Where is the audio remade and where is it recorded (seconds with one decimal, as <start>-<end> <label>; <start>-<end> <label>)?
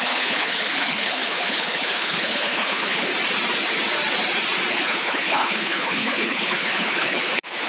0.0-3.1 remade; 3.1-4.7 recorded; 4.7-7.7 remade